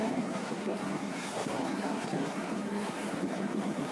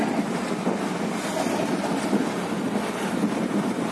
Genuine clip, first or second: second